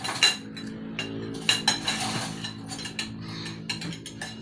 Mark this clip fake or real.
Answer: real